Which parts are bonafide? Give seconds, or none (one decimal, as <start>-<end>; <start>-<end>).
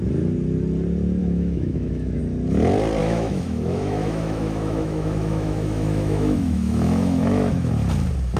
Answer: 0.0-1.2; 2.2-3.0; 7.7-8.4